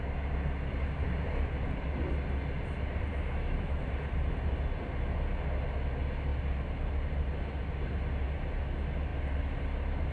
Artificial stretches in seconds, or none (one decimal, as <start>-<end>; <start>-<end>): 3.1-3.9